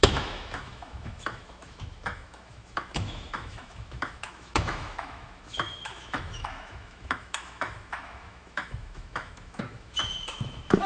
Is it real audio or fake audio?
fake